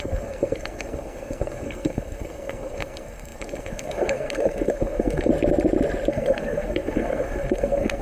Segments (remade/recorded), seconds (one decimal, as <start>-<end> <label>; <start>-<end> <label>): 0.0-5.3 remade; 5.3-6.1 recorded; 6.1-8.0 remade